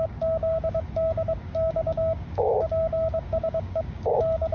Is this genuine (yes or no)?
no